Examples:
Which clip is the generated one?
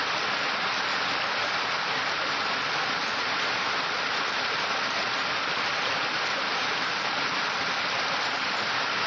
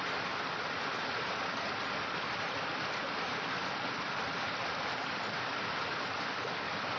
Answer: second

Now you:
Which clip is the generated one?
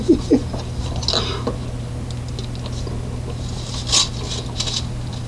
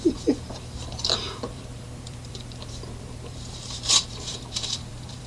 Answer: second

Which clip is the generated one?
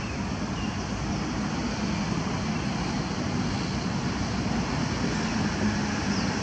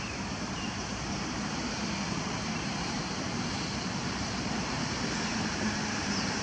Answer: second